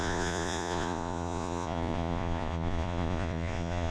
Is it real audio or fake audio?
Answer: fake